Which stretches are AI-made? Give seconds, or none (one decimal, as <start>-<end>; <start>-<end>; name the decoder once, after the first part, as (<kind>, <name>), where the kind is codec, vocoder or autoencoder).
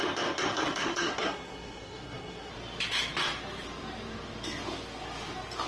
0.5-2.5 (codec, SNAC)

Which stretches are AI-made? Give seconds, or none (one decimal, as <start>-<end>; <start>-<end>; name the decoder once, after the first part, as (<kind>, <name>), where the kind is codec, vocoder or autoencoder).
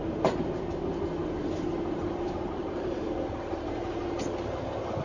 0.0-0.7 (vocoder, BigVGAN v2); 1.2-4.2